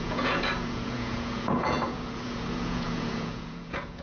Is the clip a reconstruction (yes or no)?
yes